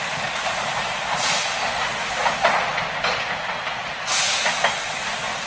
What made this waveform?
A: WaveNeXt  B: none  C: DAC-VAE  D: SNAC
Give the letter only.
B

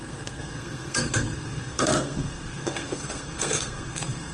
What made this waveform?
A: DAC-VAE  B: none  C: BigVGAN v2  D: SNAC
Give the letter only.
D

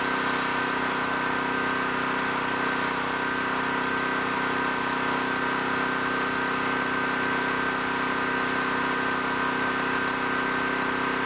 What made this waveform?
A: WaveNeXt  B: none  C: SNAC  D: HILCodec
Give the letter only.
B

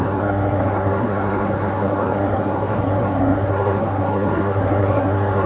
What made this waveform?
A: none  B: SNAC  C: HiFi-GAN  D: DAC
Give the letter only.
B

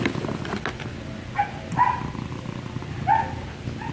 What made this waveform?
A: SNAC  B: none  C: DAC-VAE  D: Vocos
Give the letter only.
B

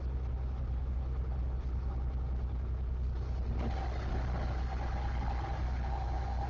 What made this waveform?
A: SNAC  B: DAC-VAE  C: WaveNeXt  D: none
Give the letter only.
D